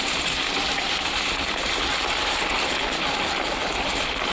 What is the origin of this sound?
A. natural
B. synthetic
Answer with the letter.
A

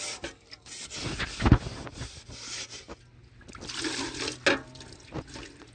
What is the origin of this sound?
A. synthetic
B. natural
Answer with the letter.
B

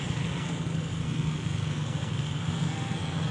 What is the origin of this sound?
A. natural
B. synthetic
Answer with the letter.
B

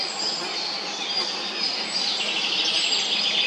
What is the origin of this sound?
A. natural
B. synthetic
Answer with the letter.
A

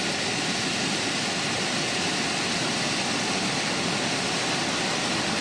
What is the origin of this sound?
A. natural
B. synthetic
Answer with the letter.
A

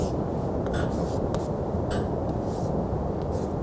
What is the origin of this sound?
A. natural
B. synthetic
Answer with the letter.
A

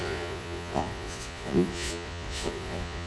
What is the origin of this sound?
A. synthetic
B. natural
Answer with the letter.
A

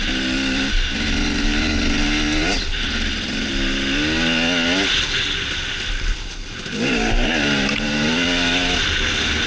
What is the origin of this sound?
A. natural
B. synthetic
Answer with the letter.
A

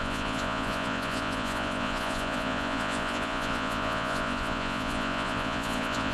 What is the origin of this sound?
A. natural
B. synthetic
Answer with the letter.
B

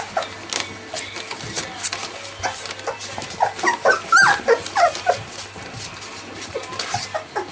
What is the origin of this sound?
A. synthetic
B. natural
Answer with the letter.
B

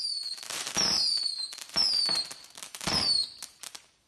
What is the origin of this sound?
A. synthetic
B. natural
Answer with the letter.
A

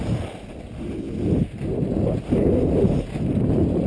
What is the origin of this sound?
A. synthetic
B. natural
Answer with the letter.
A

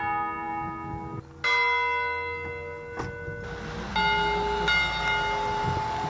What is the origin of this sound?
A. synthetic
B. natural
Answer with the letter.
B